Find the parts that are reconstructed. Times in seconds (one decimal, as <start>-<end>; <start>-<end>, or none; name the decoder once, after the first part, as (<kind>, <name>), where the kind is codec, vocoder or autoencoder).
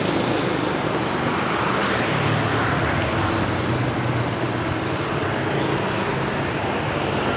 none